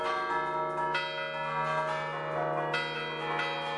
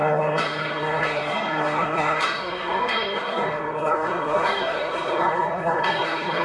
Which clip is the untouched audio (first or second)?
first